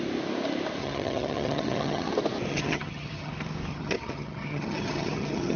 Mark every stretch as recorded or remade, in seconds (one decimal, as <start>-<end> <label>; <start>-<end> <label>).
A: 0.0-0.8 recorded; 0.8-2.1 remade; 2.1-2.5 recorded; 2.5-3.3 remade; 3.3-3.7 recorded; 3.7-5.6 remade